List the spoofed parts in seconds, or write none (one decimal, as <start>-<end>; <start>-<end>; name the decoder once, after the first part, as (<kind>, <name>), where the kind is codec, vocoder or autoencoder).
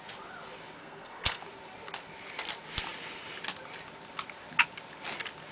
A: 0.8-1.4 (codec, SNAC)